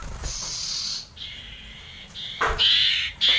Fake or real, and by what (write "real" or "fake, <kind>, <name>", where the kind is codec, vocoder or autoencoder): real